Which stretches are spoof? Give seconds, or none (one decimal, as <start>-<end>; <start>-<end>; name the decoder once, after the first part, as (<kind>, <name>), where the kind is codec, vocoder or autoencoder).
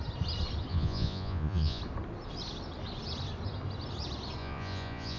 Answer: 0.7-1.8 (vocoder, Vocos); 4.4-5.2